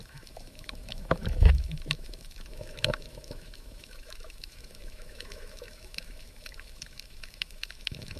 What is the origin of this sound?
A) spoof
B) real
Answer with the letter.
A